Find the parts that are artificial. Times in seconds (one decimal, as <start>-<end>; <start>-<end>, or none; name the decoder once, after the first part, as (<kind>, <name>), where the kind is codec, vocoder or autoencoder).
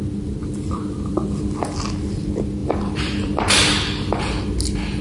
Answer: 0.4-1.6 (vocoder, BigVGAN v2); 2.6-4.4